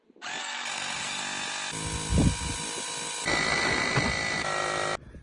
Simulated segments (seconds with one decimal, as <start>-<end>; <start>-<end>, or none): 0.4-1.2

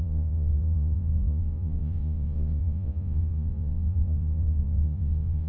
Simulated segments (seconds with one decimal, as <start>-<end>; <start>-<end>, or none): 0.0-5.5

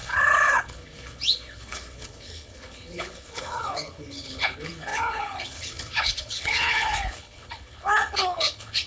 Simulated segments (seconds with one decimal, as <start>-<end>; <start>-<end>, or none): 0.0-8.9

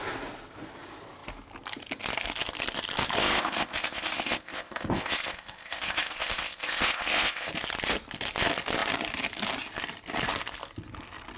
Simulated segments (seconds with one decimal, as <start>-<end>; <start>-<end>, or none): 3.2-7.5

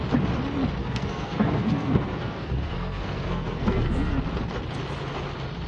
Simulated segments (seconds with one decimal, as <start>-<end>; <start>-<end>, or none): 0.8-4.2

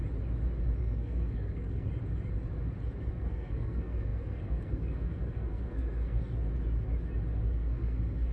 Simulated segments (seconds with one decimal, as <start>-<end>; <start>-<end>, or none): 0.8-1.9; 3.1-6.3; 7.4-8.3

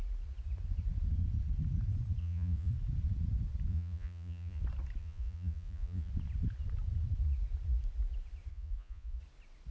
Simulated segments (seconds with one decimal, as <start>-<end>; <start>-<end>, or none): 2.2-2.7; 3.7-4.6; 5.0-6.1; 8.5-9.2

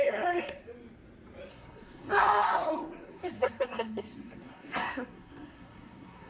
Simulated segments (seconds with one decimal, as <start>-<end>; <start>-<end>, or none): 0.0-0.6; 1.5-6.3